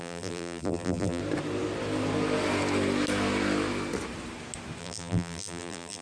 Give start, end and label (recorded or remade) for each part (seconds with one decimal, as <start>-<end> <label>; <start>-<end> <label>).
0.0-1.2 remade; 1.2-4.8 recorded; 4.8-6.0 remade